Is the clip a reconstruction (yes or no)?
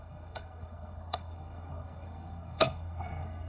yes